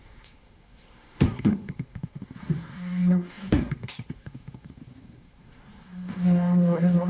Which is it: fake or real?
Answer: fake